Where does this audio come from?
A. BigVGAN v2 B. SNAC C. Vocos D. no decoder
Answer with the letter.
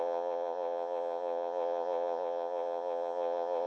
C